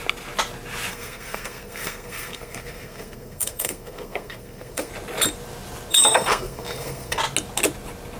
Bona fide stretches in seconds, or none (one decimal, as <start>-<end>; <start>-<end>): 0.0-0.9; 4.9-5.9; 7.2-8.2